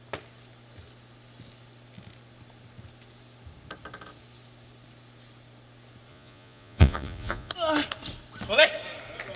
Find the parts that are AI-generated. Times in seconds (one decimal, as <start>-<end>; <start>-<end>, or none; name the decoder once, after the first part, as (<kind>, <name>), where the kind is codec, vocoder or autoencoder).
6.1-7.5 (vocoder, Vocos)